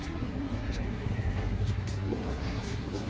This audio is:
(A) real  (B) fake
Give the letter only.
B